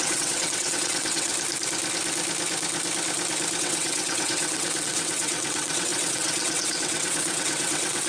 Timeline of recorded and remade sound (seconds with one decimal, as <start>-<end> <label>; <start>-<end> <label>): 0.0-1.3 remade; 1.3-3.6 recorded; 3.6-8.1 remade